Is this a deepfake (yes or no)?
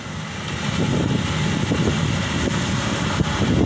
no